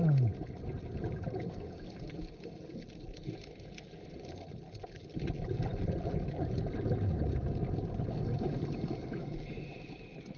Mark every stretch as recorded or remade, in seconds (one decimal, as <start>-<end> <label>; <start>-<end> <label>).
0.0-10.4 recorded

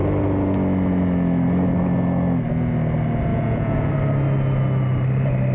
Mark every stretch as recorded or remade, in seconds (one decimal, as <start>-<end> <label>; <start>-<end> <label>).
0.0-3.3 recorded; 3.3-3.9 remade; 3.9-5.5 recorded

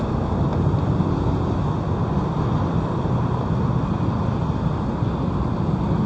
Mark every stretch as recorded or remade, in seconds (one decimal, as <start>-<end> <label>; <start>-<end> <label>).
0.0-6.1 recorded

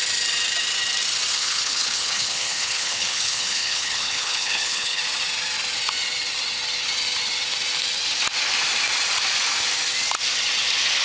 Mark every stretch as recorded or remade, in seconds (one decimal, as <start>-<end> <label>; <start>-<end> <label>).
0.0-1.3 recorded; 1.3-5.0 remade; 5.0-11.0 recorded

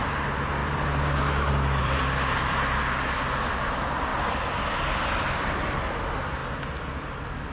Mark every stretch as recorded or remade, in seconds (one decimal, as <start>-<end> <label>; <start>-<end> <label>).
0.0-0.6 recorded; 0.6-1.2 remade; 1.2-1.8 recorded; 1.8-2.8 remade; 2.8-7.5 recorded

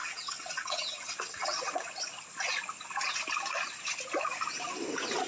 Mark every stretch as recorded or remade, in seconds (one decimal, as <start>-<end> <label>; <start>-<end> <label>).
0.0-1.9 remade; 1.9-5.3 recorded

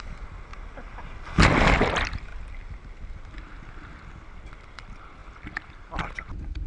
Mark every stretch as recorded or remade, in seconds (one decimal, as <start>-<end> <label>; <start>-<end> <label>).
0.0-0.5 remade; 0.5-1.7 recorded; 1.7-2.3 remade; 2.3-3.7 recorded; 3.7-6.7 remade

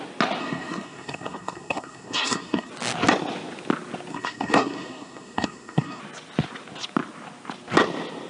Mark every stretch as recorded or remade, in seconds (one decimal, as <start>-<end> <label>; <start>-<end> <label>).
0.0-0.4 recorded; 0.4-2.7 remade; 2.7-4.1 recorded; 4.1-6.0 remade; 6.0-8.3 recorded